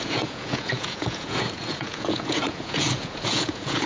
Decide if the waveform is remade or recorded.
remade